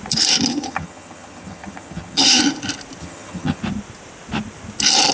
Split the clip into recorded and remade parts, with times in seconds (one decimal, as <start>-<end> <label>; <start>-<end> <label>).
0.0-0.5 recorded; 0.5-2.4 remade; 2.4-3.0 recorded; 3.0-3.6 remade; 3.6-5.1 recorded